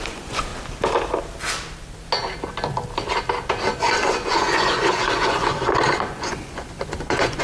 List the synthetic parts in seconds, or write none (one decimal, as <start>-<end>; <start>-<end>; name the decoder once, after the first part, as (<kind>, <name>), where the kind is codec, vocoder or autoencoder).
0.0-0.5 (vocoder, Vocos); 3.8-7.4